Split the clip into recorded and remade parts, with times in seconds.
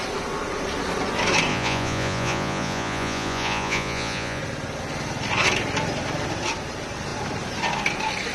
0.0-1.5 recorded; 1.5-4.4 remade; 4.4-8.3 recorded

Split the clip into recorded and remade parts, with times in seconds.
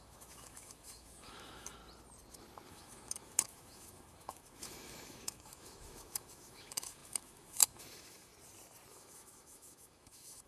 0.0-1.8 remade; 1.8-2.7 recorded; 2.7-8.3 remade; 8.3-8.9 recorded; 8.9-10.5 remade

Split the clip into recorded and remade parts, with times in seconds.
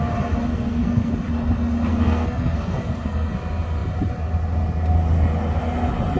0.0-0.5 recorded; 0.5-1.1 remade; 1.1-1.9 recorded; 1.9-3.3 remade; 3.3-6.2 recorded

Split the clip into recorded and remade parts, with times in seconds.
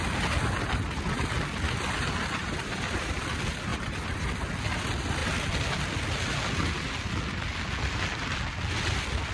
0.0-2.4 recorded; 2.4-3.2 remade; 3.2-3.7 recorded; 3.7-4.3 remade; 4.3-9.3 recorded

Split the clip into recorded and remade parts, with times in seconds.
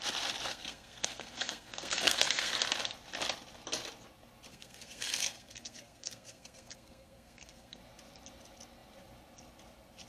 0.0-0.5 recorded; 0.5-2.5 remade; 2.5-4.5 recorded; 4.5-7.8 remade; 7.8-10.1 recorded